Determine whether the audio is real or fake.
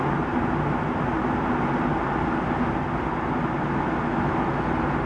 real